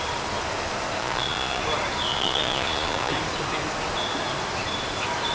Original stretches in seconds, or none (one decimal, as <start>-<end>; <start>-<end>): 0.0-1.0; 1.6-2.1; 3.1-5.3